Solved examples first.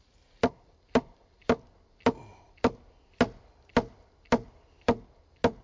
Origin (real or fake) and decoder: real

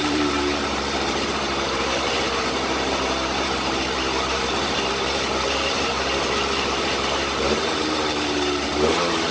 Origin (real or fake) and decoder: fake, vocoder, BigVGAN v2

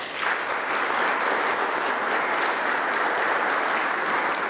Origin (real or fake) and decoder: real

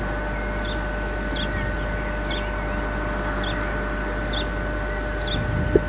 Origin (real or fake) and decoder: real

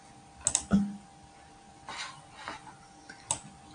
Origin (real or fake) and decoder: real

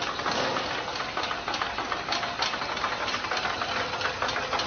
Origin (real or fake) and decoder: real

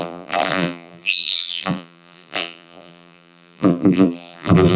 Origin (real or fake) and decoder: fake, vocoder, BigVGAN v2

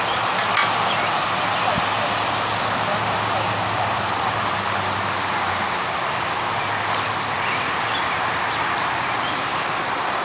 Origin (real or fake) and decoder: real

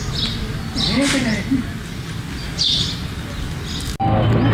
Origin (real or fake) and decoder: real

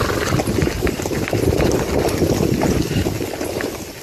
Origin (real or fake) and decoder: real